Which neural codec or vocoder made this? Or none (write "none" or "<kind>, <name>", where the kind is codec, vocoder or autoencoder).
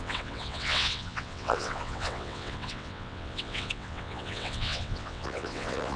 vocoder, WaveNeXt